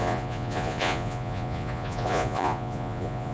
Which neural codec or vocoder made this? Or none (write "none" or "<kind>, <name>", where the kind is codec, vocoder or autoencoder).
vocoder, Vocos